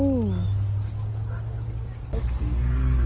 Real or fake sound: real